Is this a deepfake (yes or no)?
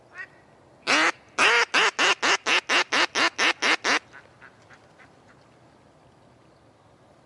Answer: no